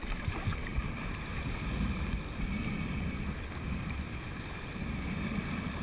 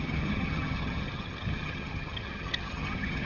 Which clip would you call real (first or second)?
first